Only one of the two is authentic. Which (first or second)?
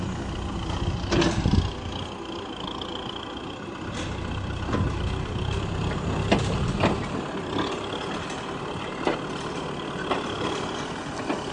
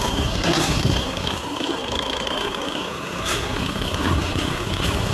first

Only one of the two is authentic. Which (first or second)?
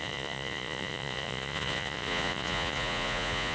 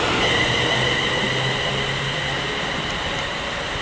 second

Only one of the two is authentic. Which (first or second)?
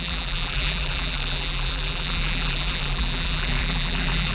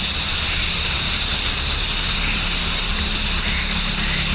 second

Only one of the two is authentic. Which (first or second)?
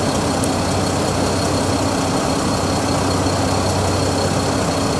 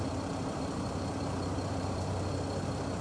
first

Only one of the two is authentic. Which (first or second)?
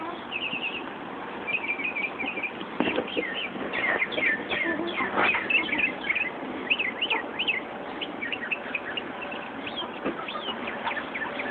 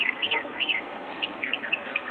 first